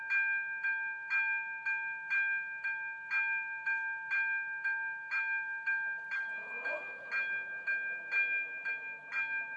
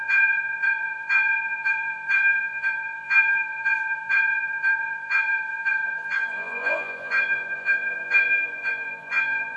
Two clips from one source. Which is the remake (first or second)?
second